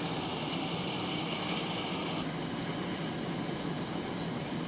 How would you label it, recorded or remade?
recorded